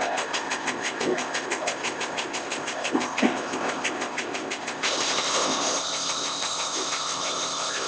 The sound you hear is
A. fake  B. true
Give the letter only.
A